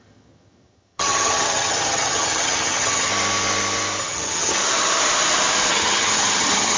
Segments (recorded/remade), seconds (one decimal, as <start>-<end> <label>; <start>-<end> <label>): 0.0-3.1 remade; 3.1-4.0 recorded; 4.0-4.6 remade; 4.6-5.7 recorded; 5.7-6.8 remade